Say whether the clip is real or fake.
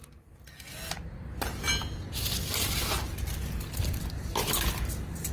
real